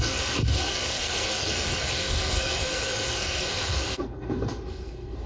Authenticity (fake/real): fake